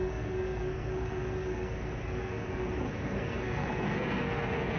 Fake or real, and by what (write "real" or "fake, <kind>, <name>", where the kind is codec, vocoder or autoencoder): fake, codec, SNAC